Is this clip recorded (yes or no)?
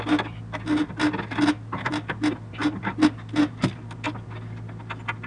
yes